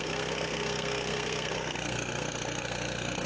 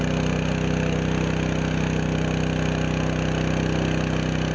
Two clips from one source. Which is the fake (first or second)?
first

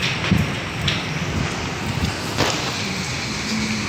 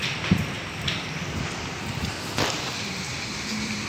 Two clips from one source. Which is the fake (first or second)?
second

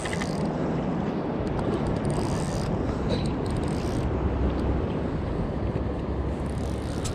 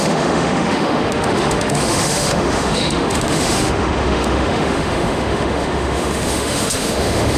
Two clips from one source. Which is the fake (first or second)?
second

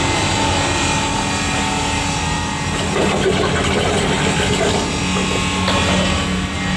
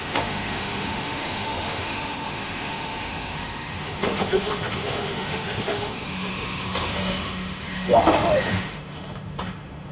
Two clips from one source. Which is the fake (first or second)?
second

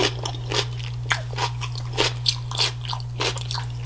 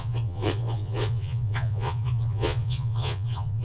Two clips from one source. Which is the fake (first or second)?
second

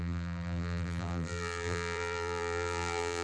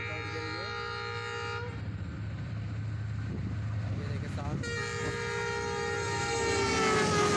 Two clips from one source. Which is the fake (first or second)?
first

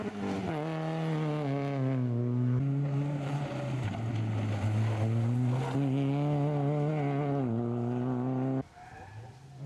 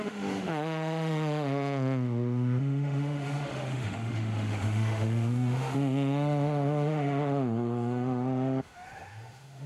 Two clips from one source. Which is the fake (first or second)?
second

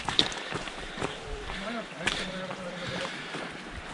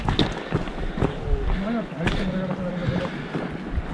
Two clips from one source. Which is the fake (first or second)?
first